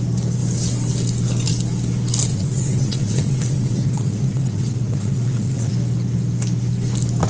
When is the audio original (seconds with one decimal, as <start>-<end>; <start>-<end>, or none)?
0.0-2.3; 5.7-7.3